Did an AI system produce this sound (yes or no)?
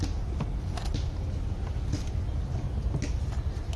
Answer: no